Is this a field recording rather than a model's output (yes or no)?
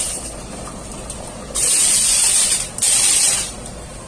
yes